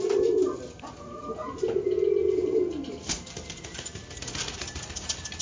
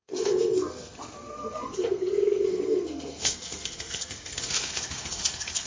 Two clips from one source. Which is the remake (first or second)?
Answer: second